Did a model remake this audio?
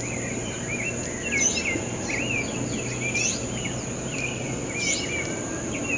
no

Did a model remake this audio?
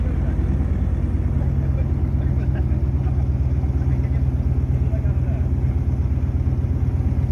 no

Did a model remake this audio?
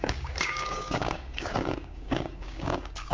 yes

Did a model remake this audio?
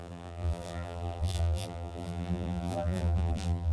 yes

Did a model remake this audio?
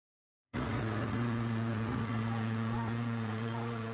yes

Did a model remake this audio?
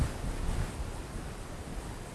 no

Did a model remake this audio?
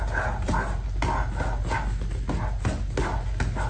no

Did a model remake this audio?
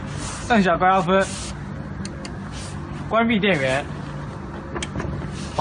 no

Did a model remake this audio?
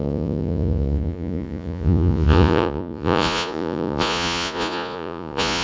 yes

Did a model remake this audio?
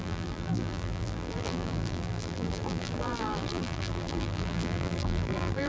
yes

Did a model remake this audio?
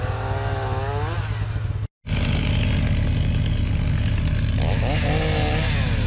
no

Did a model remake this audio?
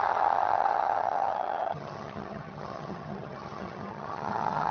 yes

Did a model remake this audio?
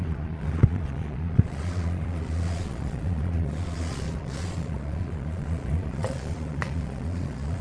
yes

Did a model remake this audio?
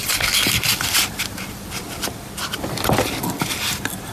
yes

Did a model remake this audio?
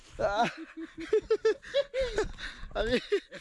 no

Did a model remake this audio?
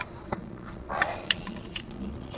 yes